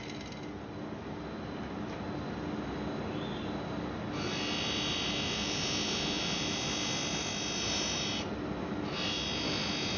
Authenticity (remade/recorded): recorded